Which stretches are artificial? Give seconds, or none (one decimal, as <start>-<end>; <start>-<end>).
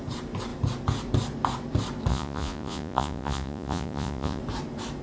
2.1-4.4